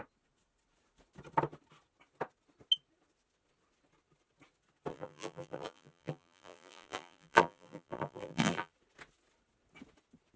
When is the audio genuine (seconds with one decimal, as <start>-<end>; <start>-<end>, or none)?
0.0-4.9; 8.7-10.4